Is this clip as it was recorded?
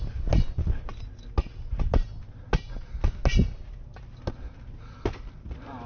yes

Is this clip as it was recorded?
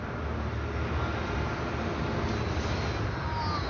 yes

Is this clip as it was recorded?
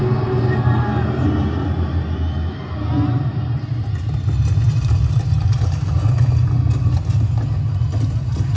yes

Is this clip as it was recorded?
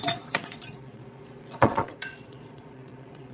no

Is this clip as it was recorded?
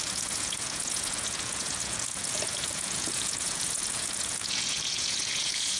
no